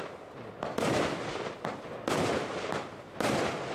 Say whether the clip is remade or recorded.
recorded